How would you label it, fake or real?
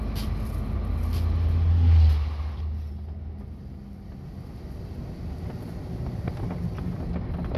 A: real